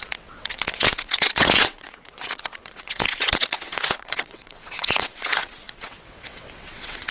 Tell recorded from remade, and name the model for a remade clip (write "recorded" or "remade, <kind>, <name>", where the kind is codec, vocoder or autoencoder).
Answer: remade, vocoder, WaveNeXt